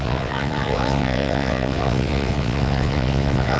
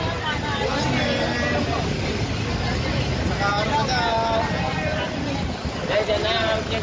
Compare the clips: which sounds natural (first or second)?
second